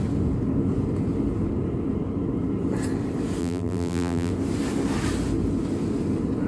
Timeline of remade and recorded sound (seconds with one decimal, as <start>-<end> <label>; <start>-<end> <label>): 0.0-3.4 recorded; 3.4-4.3 remade; 4.3-6.5 recorded